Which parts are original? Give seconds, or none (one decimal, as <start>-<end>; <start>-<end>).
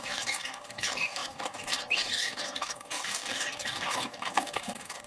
none